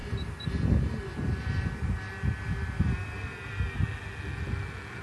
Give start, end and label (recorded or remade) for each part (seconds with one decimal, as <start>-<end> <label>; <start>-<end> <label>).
0.0-2.5 remade; 2.5-5.0 recorded

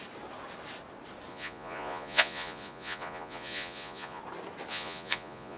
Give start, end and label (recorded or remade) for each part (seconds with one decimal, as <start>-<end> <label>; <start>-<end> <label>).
0.0-1.3 recorded; 1.3-4.2 remade; 4.2-4.7 recorded; 4.7-5.6 remade

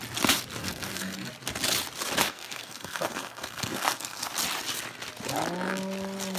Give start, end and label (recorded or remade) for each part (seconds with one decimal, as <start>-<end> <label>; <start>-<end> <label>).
0.0-0.6 recorded; 0.6-1.3 remade; 1.3-2.2 recorded; 2.2-4.3 remade; 4.3-6.4 recorded

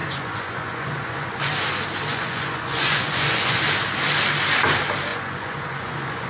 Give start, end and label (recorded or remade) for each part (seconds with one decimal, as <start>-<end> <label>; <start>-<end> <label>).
0.0-1.5 remade; 1.5-2.1 recorded; 2.1-3.6 remade; 3.6-5.1 recorded; 5.1-6.3 remade

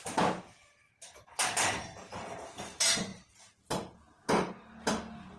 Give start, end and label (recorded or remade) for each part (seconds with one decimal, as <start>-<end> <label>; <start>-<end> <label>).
0.0-5.4 recorded

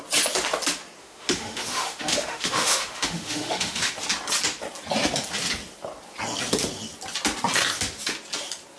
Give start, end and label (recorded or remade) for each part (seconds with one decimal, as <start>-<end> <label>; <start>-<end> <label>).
0.0-1.0 recorded; 1.0-3.9 remade; 3.9-8.8 recorded

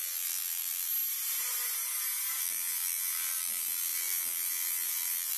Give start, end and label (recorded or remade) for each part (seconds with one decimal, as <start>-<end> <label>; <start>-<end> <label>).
0.0-0.9 remade; 0.9-2.4 recorded; 2.4-5.4 remade